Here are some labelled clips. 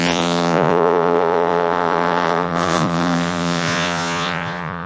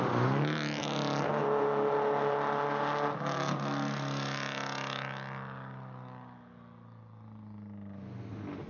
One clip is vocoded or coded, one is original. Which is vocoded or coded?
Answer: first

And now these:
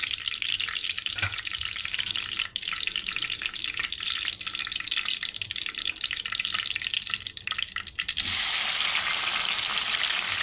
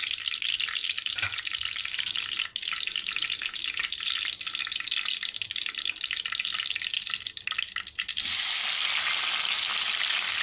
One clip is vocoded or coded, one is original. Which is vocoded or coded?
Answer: first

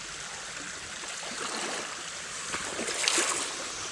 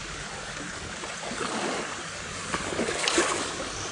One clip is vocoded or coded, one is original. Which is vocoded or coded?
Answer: second